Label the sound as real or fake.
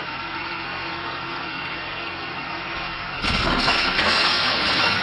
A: fake